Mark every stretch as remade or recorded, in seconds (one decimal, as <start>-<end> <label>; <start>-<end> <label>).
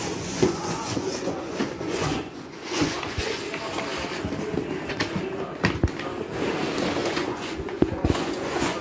0.0-3.4 remade; 3.4-7.0 recorded; 7.0-8.8 remade